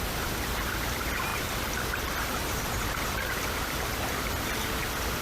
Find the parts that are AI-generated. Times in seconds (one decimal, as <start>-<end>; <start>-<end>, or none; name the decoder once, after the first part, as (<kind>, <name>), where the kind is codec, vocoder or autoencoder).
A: 1.3-4.4 (vocoder, BigVGAN v2)